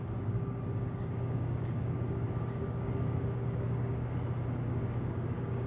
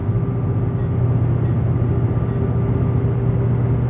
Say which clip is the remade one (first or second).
first